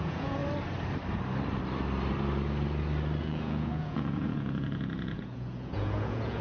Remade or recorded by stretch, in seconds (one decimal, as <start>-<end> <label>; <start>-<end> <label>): 0.0-0.4 remade; 0.4-3.2 recorded; 3.2-6.4 remade